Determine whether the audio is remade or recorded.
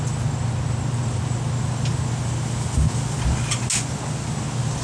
recorded